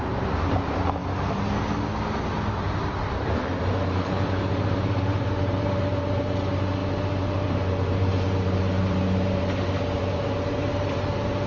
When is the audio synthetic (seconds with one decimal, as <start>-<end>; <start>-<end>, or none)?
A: 0.0-1.0; 3.6-11.5